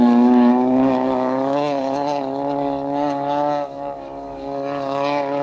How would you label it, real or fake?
fake